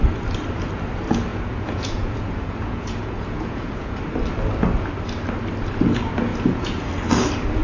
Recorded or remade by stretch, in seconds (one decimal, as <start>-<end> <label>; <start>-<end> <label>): 0.0-1.3 recorded; 1.3-4.0 remade; 4.0-6.3 recorded; 6.3-6.9 remade; 6.9-7.6 recorded